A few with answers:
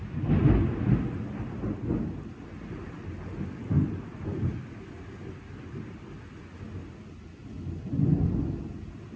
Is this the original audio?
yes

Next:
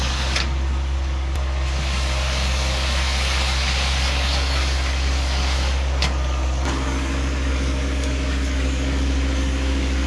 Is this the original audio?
no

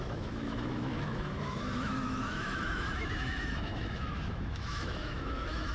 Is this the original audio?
no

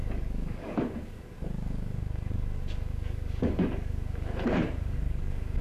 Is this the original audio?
no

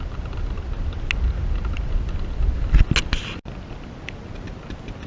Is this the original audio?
yes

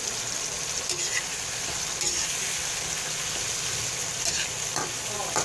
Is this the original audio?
yes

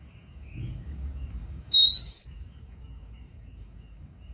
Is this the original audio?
no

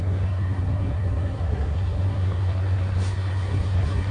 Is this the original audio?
no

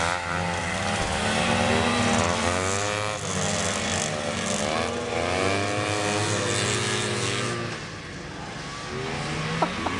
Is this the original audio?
yes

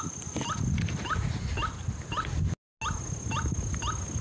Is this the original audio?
yes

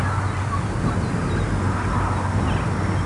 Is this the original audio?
yes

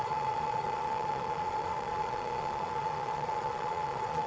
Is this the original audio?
no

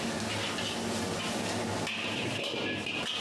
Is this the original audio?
yes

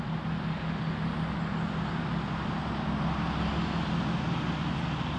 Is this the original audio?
yes